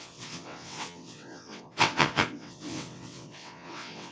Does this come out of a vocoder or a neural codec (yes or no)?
yes